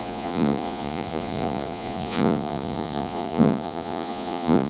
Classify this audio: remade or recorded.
remade